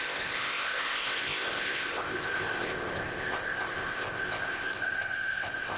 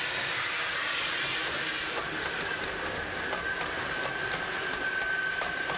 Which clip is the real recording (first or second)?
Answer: second